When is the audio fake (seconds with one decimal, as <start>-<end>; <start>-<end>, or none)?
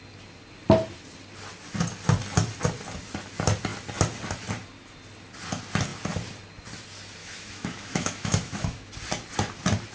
7.2-8.9